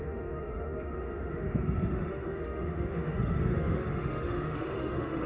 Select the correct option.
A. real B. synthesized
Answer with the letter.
B